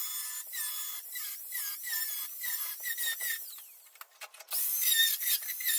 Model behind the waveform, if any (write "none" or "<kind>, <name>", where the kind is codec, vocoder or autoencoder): none